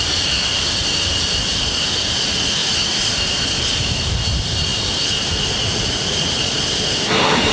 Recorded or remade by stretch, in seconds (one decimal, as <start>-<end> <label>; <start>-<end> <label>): 0.0-5.7 recorded; 5.7-6.6 remade; 6.6-7.5 recorded